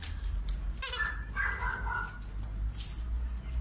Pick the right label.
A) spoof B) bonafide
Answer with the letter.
B